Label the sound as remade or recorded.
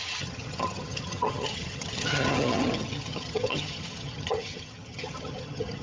remade